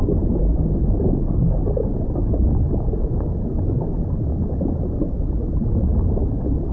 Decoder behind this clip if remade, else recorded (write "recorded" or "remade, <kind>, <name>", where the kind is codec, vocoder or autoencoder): recorded